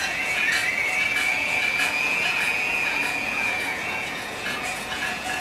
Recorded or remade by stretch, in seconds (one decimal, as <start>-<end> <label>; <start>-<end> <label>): 0.0-0.6 remade; 0.6-1.1 recorded; 1.1-5.4 remade